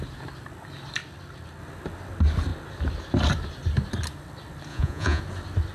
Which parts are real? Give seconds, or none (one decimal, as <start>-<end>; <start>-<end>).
0.0-4.7; 5.2-5.7